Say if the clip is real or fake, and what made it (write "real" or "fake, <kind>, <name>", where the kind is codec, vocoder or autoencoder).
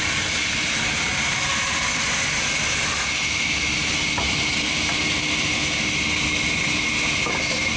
real